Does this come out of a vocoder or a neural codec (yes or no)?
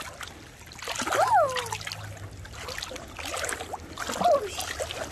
no